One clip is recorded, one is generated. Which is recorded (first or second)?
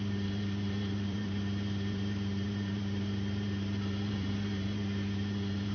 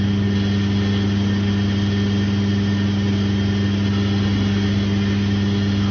second